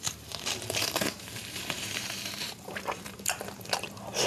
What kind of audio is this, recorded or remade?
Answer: remade